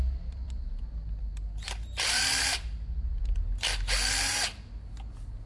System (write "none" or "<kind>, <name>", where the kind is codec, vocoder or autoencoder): none